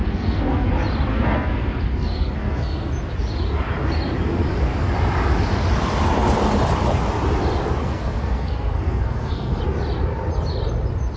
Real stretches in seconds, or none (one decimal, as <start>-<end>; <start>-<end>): 0.7-1.1; 2.9-7.8; 9.6-11.2